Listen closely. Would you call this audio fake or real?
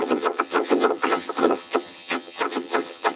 fake